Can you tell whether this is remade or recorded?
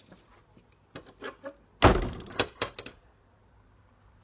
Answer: recorded